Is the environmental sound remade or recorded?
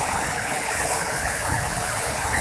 remade